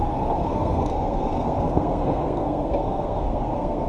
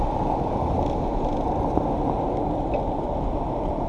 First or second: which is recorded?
second